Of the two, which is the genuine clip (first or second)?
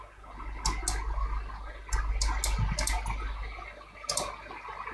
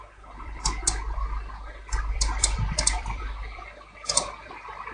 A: first